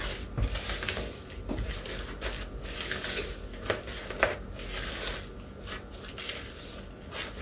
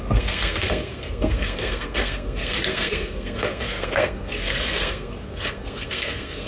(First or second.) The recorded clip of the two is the first